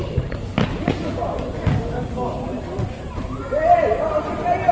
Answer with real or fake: real